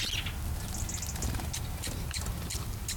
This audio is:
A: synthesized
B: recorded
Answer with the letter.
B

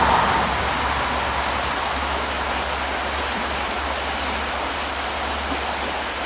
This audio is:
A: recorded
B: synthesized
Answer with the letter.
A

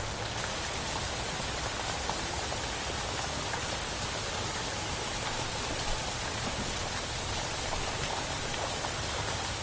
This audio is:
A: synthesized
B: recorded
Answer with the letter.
B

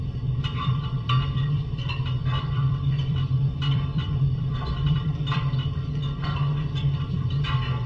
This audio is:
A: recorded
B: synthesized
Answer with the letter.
B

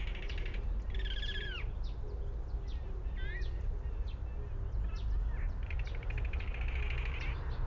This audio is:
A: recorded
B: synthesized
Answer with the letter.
A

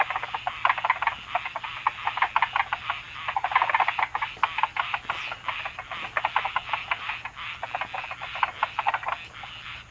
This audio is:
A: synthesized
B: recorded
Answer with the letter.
B